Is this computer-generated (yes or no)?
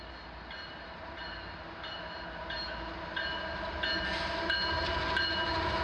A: no